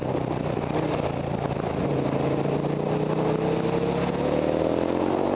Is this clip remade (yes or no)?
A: no